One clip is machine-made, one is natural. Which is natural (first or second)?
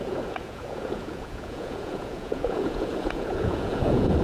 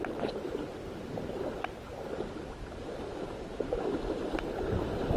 second